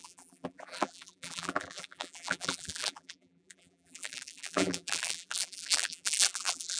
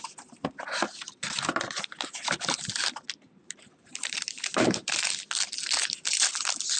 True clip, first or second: second